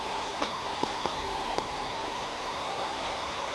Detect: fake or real fake